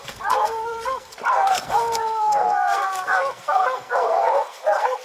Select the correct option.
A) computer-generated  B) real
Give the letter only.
A